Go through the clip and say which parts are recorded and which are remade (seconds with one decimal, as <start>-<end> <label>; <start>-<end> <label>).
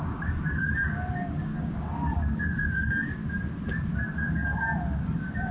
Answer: 0.0-1.5 remade; 1.5-2.1 recorded; 2.1-3.2 remade; 3.2-3.9 recorded; 3.9-5.5 remade